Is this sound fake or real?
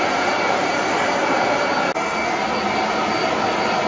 real